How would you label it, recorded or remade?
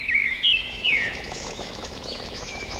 remade